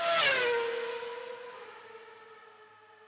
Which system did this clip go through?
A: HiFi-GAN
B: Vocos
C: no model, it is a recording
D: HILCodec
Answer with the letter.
C